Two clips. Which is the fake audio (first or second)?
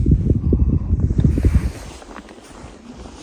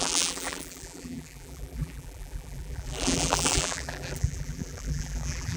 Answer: second